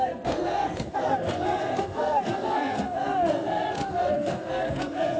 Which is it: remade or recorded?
remade